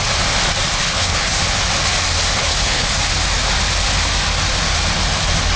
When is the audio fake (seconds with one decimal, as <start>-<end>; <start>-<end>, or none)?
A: 0.7-1.4; 2.4-2.9